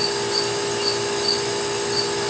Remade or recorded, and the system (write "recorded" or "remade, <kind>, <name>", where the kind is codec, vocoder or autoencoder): recorded